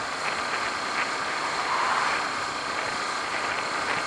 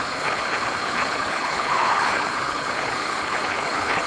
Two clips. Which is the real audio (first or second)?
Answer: first